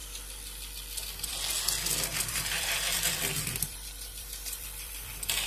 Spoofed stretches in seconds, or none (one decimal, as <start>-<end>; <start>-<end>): 2.1-5.5